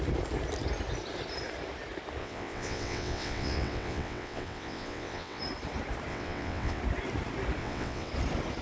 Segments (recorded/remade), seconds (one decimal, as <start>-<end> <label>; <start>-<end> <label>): 0.0-2.2 recorded; 2.2-5.4 remade; 5.4-6.1 recorded; 6.1-6.8 remade; 6.8-7.6 recorded; 7.6-8.1 remade; 8.1-8.6 recorded